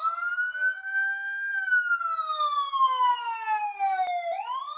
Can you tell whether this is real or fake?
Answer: real